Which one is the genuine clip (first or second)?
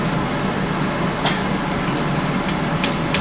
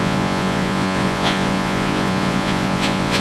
first